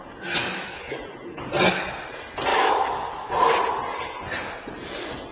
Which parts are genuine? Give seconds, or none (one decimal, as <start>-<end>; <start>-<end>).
0.0-0.4; 1.0-2.5; 3.3-5.3